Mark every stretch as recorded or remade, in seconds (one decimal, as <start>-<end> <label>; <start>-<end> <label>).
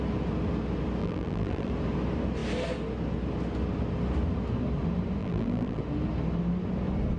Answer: 0.0-1.0 recorded; 1.0-1.7 remade; 1.7-5.2 recorded; 5.2-5.8 remade; 5.8-7.2 recorded